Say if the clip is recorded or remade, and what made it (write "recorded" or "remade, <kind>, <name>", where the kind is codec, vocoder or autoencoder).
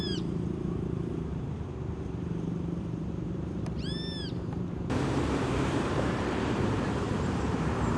remade, vocoder, BigVGAN v2